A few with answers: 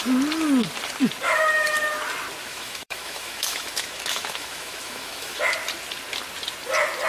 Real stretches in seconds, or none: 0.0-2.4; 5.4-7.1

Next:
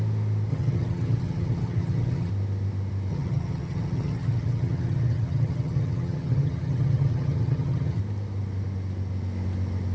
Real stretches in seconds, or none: 0.0-0.5; 2.3-3.1; 8.0-9.9

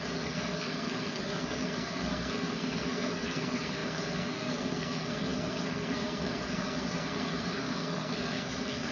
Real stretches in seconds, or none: none

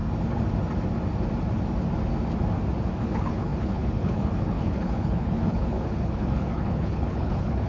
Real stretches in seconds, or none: 0.0-3.0

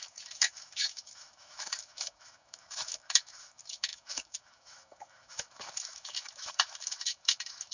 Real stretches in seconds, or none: none

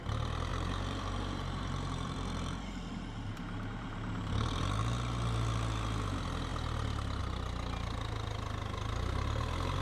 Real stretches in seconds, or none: 0.0-0.5; 4.6-9.8

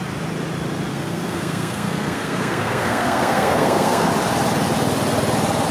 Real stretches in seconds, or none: 0.0-0.9; 4.1-5.7

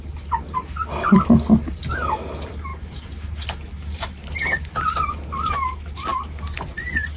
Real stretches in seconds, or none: 0.0-7.2